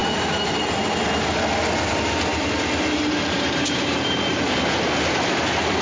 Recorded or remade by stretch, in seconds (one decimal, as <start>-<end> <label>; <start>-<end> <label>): 0.0-1.0 remade; 1.0-2.3 recorded; 2.3-4.5 remade; 4.5-5.8 recorded